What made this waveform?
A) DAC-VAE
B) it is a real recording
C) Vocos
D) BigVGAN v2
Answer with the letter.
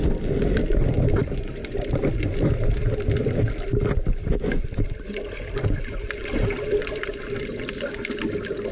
B